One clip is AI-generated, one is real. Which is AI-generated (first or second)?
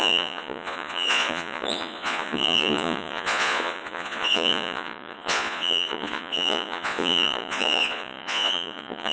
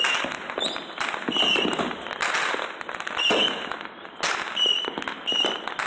first